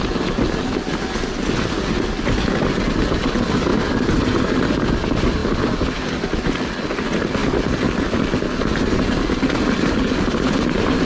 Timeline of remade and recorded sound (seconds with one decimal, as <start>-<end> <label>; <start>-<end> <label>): 0.0-11.0 recorded